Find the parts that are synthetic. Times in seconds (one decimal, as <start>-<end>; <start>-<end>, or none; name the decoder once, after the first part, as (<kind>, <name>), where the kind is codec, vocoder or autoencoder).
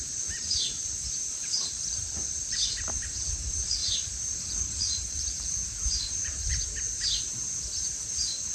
0.0-6.5 (vocoder, BigVGAN v2)